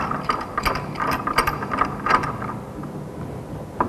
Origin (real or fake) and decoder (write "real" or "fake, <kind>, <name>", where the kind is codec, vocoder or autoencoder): real